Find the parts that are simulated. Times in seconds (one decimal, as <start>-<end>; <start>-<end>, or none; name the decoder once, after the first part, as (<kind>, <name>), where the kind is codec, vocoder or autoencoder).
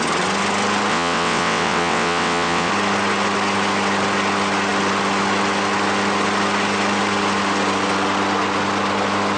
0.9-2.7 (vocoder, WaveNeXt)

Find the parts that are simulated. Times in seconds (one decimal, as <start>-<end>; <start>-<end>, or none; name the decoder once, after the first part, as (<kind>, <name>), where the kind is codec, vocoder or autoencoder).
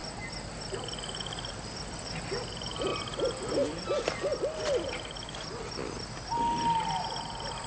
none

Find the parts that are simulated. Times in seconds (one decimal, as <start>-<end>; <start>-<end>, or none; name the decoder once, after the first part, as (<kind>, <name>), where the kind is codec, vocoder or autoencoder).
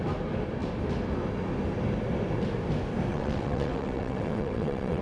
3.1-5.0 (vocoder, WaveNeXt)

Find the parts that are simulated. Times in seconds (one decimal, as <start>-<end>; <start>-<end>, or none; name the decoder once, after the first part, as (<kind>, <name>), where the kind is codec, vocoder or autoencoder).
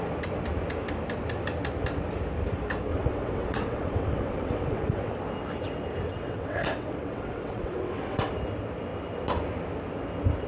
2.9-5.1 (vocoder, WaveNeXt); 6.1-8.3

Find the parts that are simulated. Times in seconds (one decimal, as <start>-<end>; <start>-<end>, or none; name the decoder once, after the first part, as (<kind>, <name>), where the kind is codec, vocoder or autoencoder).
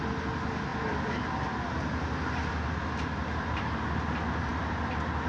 none